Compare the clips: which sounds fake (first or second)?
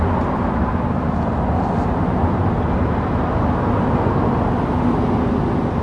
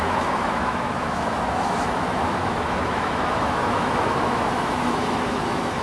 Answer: second